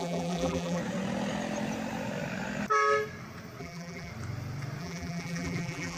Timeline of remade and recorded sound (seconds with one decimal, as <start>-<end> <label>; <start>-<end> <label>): 0.0-0.8 remade; 0.8-3.6 recorded; 3.6-4.1 remade; 4.1-4.8 recorded; 4.8-6.0 remade